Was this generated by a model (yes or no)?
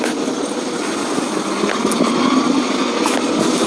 no